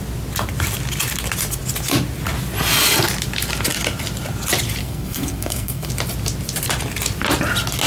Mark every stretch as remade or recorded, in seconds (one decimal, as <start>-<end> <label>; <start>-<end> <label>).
0.0-4.8 recorded; 4.8-5.9 remade; 5.9-7.9 recorded